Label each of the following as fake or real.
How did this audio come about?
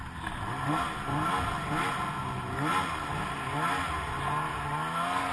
real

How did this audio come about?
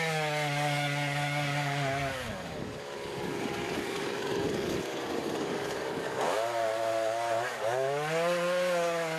fake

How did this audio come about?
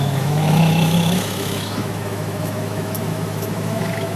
fake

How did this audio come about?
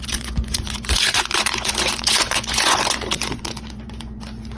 fake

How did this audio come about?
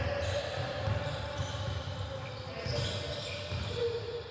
real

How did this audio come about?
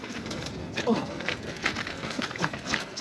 fake